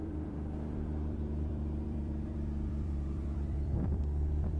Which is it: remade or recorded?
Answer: remade